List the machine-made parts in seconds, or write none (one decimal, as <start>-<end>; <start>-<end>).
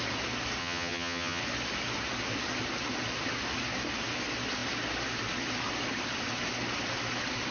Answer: 0.6-1.4